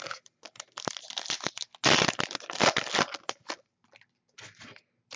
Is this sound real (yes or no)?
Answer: yes